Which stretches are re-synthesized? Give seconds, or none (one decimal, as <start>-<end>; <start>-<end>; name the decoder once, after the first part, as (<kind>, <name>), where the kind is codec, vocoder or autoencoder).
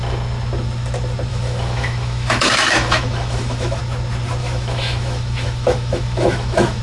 1.3-3.8 (autoencoder, DAC-VAE); 4.4-6.8